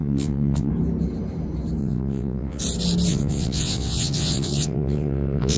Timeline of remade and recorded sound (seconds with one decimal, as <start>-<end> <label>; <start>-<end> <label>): 0.0-0.7 remade; 0.7-1.8 recorded; 1.8-2.6 remade; 2.6-3.1 recorded; 3.1-5.6 remade

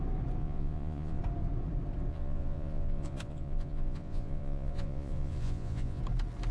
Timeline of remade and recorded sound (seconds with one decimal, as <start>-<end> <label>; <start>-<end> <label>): 0.0-0.4 recorded; 0.4-1.2 remade; 1.2-2.1 recorded; 2.1-6.0 remade; 6.0-6.5 recorded

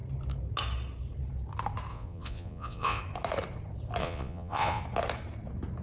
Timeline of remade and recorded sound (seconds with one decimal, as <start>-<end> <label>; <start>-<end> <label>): 0.0-1.9 recorded; 1.9-3.0 remade; 3.0-4.0 recorded; 4.0-4.8 remade; 4.8-5.8 recorded

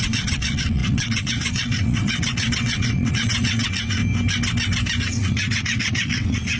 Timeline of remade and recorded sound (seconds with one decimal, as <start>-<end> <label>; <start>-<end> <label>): 0.0-4.0 remade; 4.0-5.0 recorded; 5.0-6.6 remade

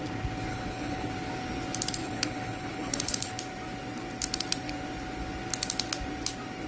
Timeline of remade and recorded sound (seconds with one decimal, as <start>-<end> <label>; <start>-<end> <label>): 0.0-0.5 recorded; 0.5-1.1 remade; 1.1-2.0 recorded; 2.0-3.4 remade; 3.4-6.7 recorded

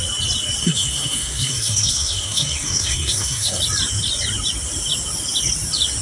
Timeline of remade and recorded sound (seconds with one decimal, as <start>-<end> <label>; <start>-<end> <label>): 0.0-0.6 recorded; 0.6-3.6 remade; 3.6-6.0 recorded

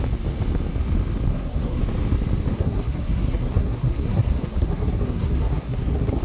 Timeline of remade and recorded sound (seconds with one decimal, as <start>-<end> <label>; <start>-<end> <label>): 0.0-1.3 recorded; 1.3-1.8 remade; 1.8-2.5 recorded; 2.5-6.2 remade

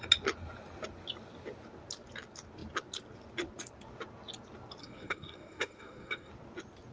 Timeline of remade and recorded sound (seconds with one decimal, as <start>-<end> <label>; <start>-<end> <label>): 0.0-4.8 recorded; 4.8-6.3 remade; 6.3-6.9 recorded